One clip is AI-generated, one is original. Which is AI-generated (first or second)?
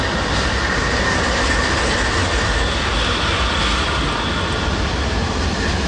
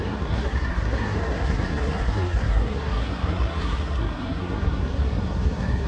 second